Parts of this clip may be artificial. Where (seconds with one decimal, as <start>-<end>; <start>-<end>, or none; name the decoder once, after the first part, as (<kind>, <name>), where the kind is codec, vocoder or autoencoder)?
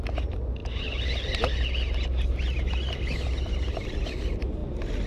none